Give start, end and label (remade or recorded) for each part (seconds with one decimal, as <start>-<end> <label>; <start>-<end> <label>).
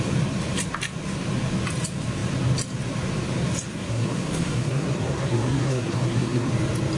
0.0-3.7 recorded; 3.7-6.5 remade; 6.5-7.0 recorded